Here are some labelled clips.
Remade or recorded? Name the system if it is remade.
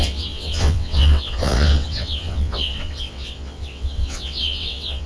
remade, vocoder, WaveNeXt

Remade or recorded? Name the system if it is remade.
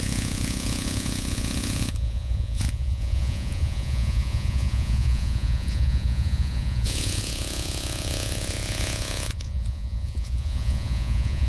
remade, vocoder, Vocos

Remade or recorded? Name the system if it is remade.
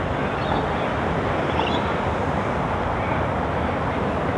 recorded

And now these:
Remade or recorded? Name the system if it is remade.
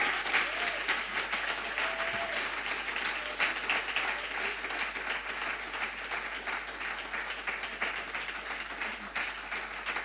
recorded